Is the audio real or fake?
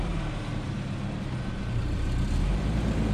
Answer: fake